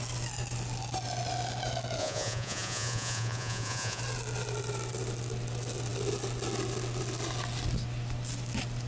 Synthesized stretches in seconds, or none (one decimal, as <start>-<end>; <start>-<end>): 2.0-4.0